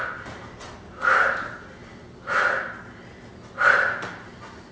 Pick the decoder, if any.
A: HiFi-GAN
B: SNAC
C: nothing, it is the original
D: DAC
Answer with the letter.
C